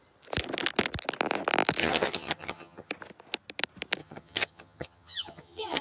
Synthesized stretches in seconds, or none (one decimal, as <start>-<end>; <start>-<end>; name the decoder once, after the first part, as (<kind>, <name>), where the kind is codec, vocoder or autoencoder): 1.8-2.9 (vocoder, HiFi-GAN); 4.0-5.8